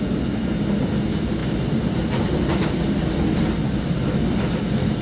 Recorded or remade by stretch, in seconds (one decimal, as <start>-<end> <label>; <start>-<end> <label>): 0.0-5.0 recorded